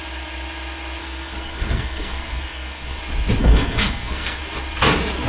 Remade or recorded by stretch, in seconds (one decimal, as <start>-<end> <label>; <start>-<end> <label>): 0.0-1.0 recorded; 1.0-3.0 remade; 3.0-3.4 recorded; 3.4-4.4 remade; 4.4-5.3 recorded